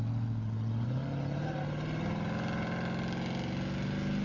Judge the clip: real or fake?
real